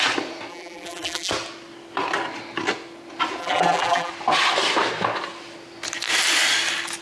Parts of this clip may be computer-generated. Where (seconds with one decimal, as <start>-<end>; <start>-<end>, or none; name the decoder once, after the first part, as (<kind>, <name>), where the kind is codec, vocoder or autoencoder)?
0.5-1.3 (vocoder, BigVGAN v2); 3.4-4.1